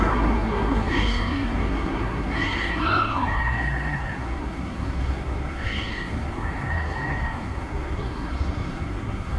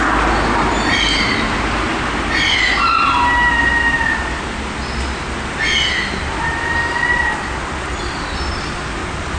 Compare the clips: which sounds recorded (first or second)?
second